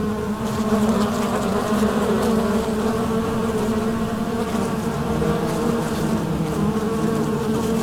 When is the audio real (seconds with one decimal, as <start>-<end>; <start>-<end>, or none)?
0.0-7.8